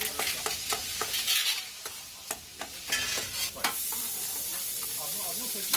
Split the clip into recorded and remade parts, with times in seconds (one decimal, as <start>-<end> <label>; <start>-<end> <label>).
0.0-0.9 recorded; 0.9-2.3 remade; 2.3-3.0 recorded; 3.0-3.7 remade; 3.7-5.8 recorded